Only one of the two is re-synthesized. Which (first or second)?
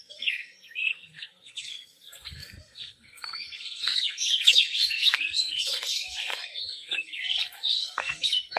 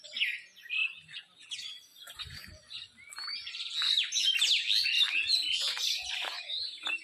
first